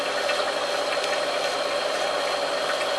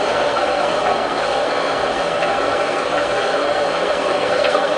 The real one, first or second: first